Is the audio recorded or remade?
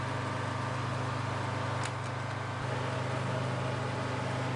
recorded